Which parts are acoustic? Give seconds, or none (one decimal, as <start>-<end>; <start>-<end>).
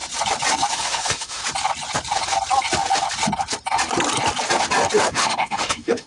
0.0-0.7; 1.4-5.1